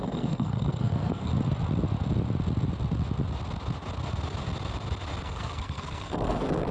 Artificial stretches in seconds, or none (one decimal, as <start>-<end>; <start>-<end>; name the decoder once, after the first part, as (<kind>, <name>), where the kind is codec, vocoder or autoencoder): 0.0-1.3 (codec, SNAC); 5.2-6.7